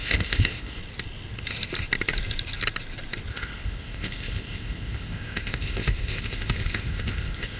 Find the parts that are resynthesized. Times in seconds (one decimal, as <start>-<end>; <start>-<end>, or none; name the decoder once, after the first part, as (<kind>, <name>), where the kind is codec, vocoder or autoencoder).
0.0-0.8 (codec, ZipCodec); 3.3-7.6